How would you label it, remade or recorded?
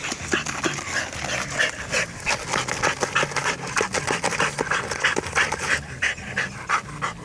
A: recorded